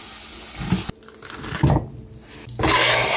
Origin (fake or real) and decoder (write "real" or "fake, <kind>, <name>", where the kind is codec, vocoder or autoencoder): real